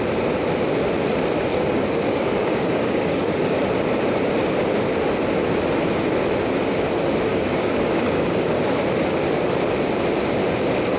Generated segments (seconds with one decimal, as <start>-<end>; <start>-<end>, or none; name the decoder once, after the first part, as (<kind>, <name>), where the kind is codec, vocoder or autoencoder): 1.5-3.6 (codec, DAC); 7.3-8.8